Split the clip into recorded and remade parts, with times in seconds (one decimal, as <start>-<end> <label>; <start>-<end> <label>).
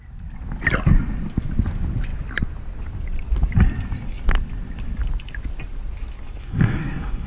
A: 0.0-6.4 recorded; 6.4-7.3 remade